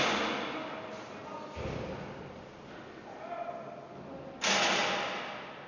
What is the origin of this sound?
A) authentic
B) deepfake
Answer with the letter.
A